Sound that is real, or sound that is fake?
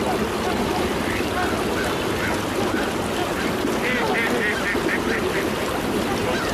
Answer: real